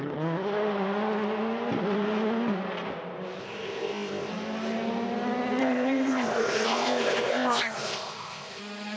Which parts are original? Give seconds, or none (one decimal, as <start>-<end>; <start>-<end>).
0.0-3.4; 4.3-5.6; 8.6-9.0